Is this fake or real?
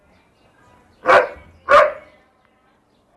real